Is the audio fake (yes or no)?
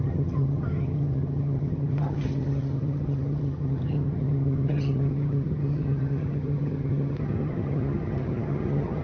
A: yes